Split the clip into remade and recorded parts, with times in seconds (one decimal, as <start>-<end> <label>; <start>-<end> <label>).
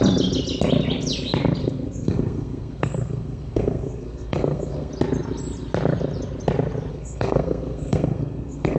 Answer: 0.0-1.6 recorded; 1.6-4.9 remade; 4.9-6.9 recorded; 6.9-8.8 remade